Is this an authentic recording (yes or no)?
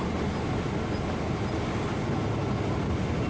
yes